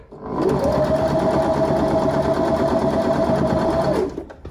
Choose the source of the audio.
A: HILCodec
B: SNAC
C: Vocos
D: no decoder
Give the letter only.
D